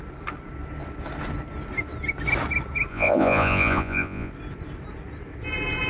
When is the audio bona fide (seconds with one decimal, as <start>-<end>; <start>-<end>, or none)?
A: 0.0-2.9; 4.3-5.9